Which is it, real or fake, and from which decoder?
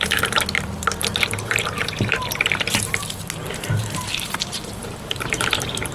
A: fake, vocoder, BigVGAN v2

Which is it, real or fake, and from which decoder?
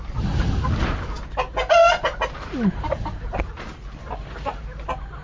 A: real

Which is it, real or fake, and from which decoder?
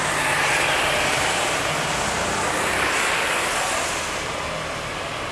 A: real